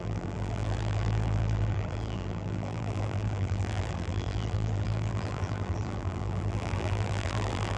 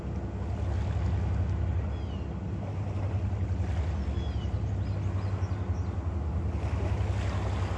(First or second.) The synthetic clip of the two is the first